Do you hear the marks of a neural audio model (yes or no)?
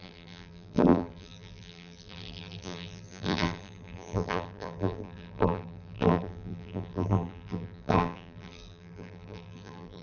yes